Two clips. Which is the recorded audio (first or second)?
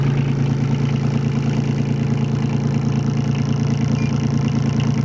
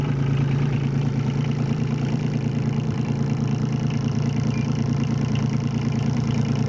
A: first